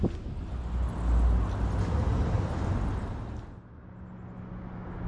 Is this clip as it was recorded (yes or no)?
yes